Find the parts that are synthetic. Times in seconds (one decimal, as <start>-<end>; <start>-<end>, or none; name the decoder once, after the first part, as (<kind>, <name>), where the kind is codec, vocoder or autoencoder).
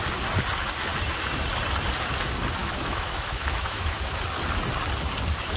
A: 2.6-4.2 (autoencoder, DAC-VAE)